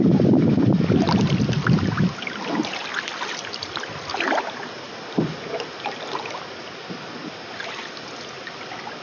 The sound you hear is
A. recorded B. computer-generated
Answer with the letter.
A